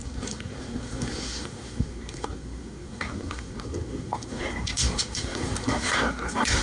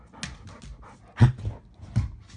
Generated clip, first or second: first